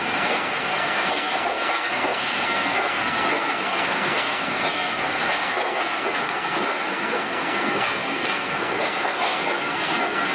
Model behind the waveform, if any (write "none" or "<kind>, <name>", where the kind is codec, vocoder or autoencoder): codec, SNAC